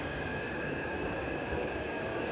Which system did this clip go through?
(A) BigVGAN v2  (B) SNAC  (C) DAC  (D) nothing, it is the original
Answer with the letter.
C